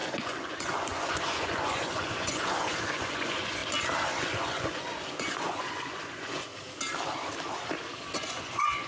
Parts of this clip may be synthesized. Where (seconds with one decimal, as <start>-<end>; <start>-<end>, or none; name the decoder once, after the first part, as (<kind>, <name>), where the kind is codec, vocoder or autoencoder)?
0.0-3.6 (vocoder, Vocos); 4.1-6.5; 8.0-8.9